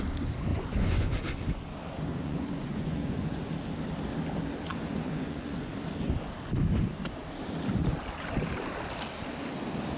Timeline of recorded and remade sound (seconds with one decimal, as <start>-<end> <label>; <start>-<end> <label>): 0.0-0.5 recorded; 0.5-1.1 remade; 1.1-2.1 recorded; 2.1-3.5 remade; 3.5-4.7 recorded; 4.7-5.7 remade; 5.7-10.0 recorded